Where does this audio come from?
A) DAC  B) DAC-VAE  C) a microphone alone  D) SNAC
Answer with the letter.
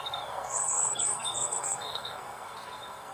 D